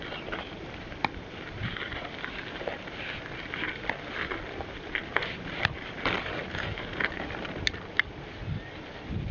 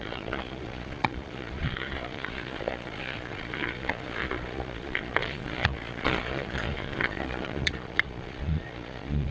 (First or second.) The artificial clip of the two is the second